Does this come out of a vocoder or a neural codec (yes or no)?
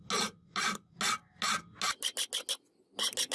no